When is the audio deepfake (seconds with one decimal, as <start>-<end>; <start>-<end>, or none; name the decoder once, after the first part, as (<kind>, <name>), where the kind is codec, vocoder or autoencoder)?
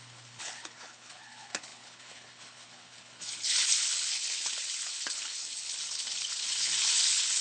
0.0-7.4 (codec, HILCodec)